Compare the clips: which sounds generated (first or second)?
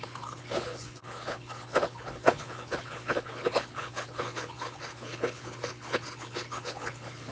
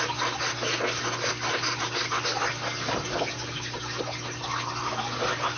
first